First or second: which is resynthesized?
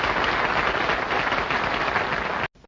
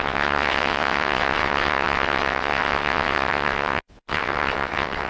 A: second